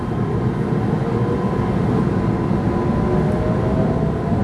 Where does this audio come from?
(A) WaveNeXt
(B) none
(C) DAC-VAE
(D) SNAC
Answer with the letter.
B